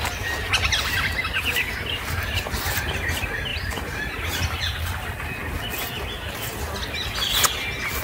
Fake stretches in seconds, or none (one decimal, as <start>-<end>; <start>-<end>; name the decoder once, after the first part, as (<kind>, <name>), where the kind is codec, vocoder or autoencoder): 3.5-4.4 (vocoder, BigVGAN v2)